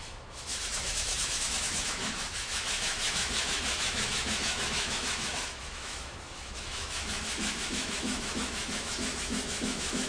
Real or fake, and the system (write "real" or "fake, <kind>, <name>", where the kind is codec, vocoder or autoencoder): fake, autoencoder, DAC-VAE